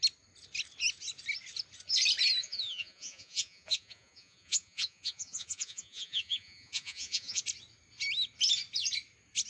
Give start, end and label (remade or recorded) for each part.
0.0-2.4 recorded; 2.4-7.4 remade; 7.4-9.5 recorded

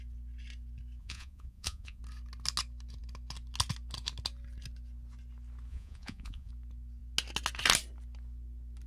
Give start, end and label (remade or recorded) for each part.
0.0-1.0 recorded; 1.0-2.0 remade; 2.0-5.7 recorded; 5.7-6.5 remade; 6.5-8.9 recorded

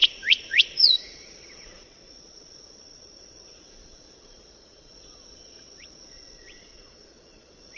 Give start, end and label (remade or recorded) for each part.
0.0-7.8 remade

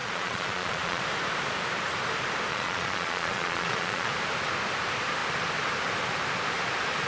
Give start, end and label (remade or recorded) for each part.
0.0-1.0 remade; 1.0-2.5 recorded; 2.5-4.1 remade; 4.1-7.1 recorded

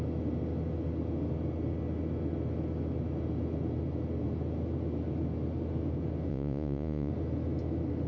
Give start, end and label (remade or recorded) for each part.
0.0-6.3 recorded; 6.3-7.1 remade; 7.1-8.1 recorded

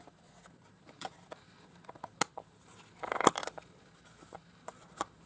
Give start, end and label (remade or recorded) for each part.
0.0-5.3 recorded